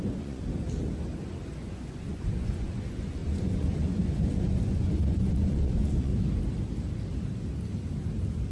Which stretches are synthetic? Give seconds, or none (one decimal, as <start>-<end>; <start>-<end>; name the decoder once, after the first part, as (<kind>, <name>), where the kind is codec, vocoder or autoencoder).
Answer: 0.0-0.4 (vocoder, Vocos); 1.5-6.1